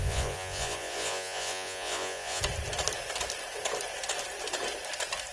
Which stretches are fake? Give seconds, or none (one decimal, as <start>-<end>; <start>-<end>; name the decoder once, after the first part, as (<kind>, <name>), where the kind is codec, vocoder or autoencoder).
0.0-2.4 (vocoder, Vocos)